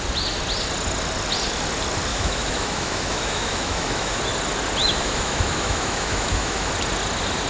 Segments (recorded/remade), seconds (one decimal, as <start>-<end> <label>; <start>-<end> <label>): 0.0-2.1 recorded; 2.1-4.2 remade; 4.2-4.8 recorded; 4.8-6.7 remade; 6.7-7.5 recorded